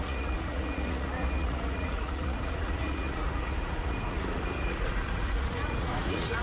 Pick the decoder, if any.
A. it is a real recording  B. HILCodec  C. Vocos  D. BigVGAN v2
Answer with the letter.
C